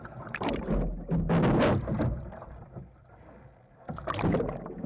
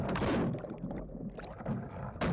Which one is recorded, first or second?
first